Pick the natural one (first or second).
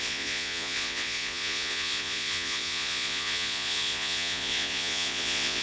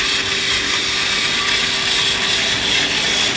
second